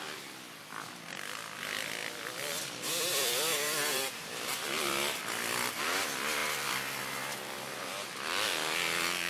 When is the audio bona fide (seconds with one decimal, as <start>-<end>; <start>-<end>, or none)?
0.0-2.0; 5.8-9.3